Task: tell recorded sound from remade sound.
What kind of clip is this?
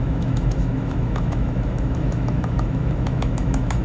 remade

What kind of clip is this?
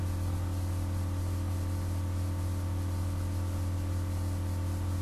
recorded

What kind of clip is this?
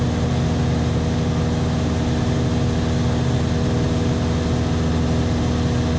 recorded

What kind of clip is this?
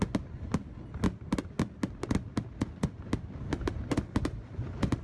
recorded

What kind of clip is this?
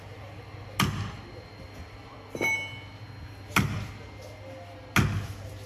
recorded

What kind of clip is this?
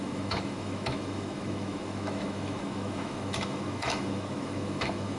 remade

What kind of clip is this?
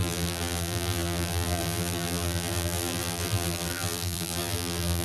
remade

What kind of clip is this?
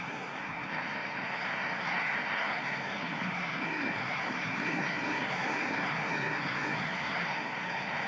remade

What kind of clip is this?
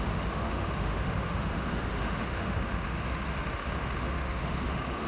remade